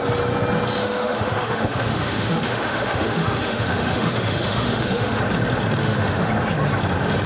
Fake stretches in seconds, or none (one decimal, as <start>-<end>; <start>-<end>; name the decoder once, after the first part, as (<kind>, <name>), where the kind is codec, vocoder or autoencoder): 0.8-5.2 (autoencoder, DAC-VAE); 5.8-6.3